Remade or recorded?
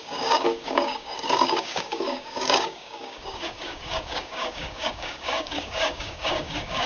remade